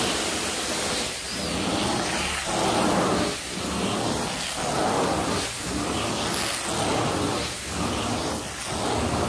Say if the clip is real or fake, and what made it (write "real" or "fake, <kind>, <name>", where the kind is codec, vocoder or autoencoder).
real